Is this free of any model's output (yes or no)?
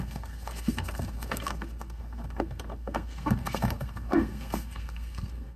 no